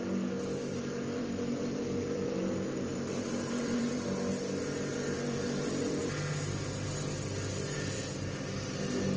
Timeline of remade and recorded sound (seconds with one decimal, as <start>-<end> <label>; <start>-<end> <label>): 0.0-1.1 recorded; 1.1-4.3 remade; 4.3-4.9 recorded; 4.9-6.0 remade; 6.0-9.2 recorded